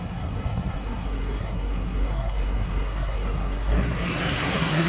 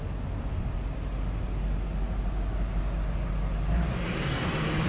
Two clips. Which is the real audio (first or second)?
second